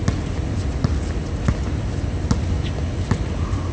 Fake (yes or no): no